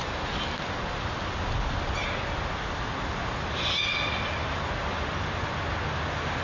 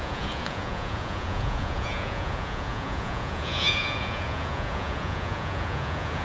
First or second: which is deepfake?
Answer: second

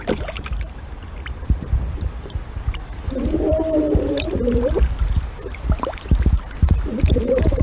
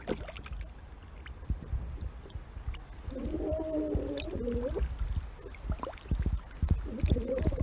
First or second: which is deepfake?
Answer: first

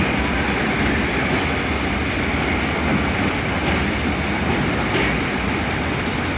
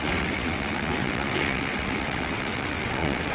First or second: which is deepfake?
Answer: second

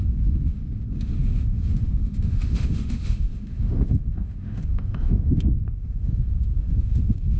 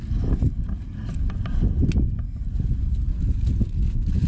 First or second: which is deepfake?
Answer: first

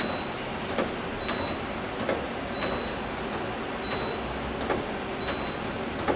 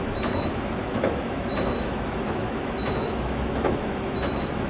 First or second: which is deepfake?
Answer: second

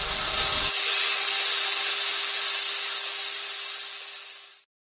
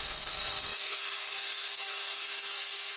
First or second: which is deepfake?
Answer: second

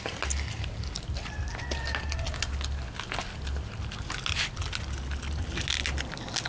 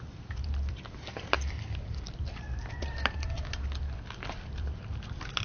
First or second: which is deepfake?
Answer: second